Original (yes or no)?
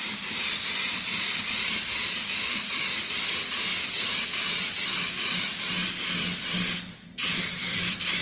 yes